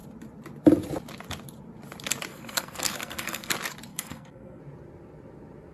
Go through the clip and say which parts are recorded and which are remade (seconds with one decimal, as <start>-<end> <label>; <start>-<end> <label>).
0.0-2.3 recorded; 2.3-3.5 remade; 3.5-3.9 recorded; 3.9-4.6 remade; 4.6-5.7 recorded